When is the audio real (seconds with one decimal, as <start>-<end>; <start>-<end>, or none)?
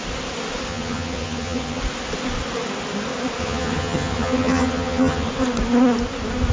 0.0-0.7; 1.8-3.4; 5.3-6.5